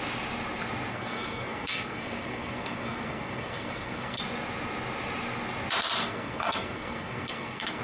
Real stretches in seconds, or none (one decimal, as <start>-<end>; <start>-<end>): 0.0-0.9; 4.2-6.0